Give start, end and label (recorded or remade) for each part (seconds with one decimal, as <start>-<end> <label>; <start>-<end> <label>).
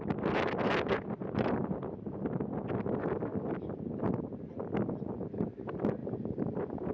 0.0-1.2 recorded; 1.2-2.1 remade; 2.1-3.3 recorded; 3.3-3.9 remade; 3.9-6.0 recorded; 6.0-6.9 remade